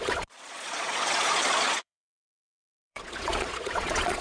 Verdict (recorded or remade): remade